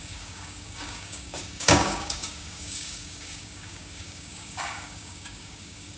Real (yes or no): no